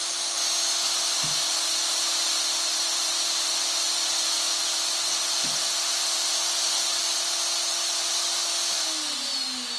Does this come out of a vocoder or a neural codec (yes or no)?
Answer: no